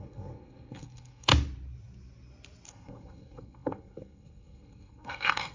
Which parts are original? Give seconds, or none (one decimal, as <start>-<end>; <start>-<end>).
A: 1.3-2.7